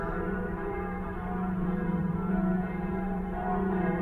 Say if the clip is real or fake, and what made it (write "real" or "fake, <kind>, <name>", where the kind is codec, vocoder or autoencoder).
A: fake, vocoder, BigVGAN v2